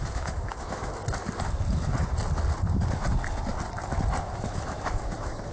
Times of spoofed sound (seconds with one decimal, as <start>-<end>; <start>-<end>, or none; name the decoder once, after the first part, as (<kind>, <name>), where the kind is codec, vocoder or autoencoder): 0.0-1.0 (autoencoder, DAC-VAE); 4.2-5.5